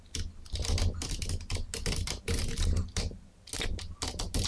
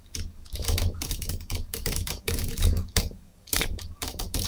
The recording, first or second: first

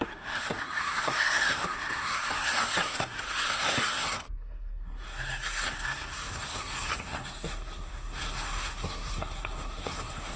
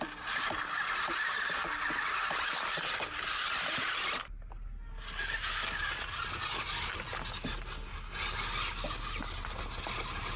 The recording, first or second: second